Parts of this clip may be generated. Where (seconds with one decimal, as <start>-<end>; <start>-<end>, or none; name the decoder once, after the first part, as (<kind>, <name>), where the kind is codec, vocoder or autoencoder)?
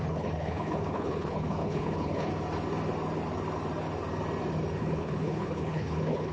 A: 0.0-2.3 (codec, HILCodec); 4.8-6.3